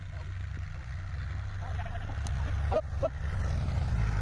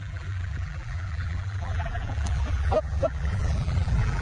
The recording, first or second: first